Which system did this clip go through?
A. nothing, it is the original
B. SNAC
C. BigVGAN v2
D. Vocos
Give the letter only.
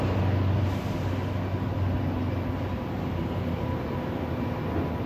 A